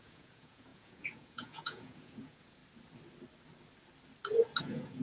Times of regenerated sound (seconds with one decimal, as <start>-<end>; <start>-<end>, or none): 0.0-2.6; 4.6-5.0